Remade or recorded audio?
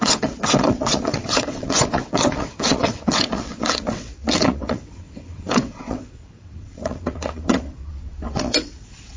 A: remade